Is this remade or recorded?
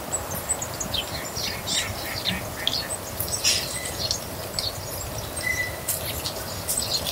recorded